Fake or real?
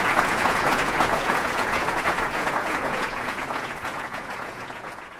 fake